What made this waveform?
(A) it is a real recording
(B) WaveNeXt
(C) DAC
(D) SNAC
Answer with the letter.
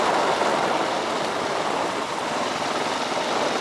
A